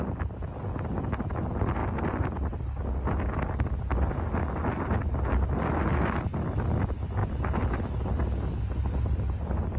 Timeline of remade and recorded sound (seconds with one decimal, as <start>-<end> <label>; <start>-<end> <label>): 0.0-9.8 recorded